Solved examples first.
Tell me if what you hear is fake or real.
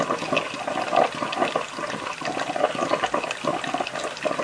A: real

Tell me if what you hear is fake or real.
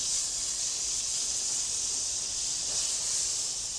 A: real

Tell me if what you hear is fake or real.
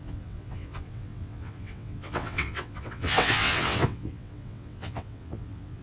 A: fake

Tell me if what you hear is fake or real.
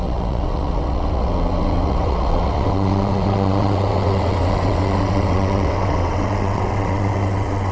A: fake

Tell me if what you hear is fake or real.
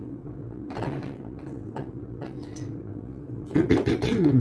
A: fake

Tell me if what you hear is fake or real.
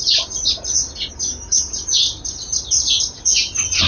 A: real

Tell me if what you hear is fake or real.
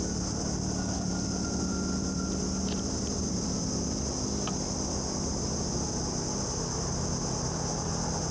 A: real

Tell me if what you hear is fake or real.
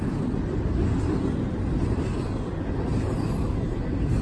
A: real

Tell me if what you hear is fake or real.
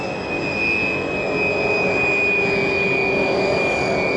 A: real